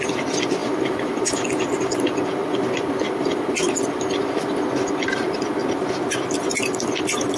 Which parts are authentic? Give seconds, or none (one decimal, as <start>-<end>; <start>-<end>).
0.0-7.4